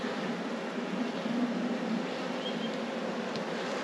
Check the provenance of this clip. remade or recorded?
recorded